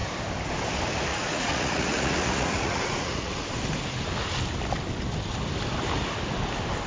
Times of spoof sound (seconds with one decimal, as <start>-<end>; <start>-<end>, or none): 1.1-3.4